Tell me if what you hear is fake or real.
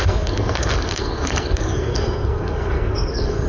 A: fake